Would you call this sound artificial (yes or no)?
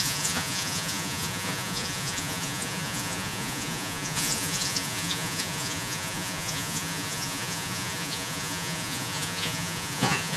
yes